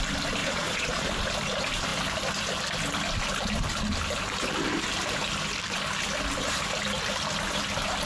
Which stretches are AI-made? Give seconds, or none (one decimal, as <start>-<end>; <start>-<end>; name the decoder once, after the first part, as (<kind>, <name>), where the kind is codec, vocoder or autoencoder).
0.4-1.1 (vocoder, Vocos)